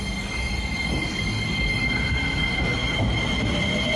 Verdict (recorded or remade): recorded